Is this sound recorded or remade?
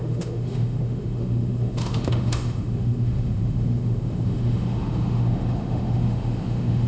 remade